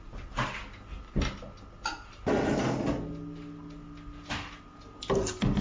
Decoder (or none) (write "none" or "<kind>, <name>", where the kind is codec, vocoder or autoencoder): none